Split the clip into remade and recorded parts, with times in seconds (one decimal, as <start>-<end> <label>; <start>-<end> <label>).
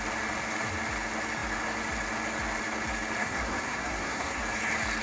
0.0-3.2 recorded; 3.2-4.4 remade; 4.4-5.0 recorded